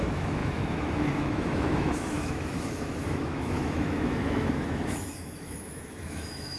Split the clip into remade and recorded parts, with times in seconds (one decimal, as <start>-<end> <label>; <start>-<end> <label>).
0.0-6.6 remade